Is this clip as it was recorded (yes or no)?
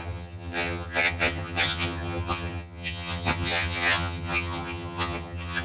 no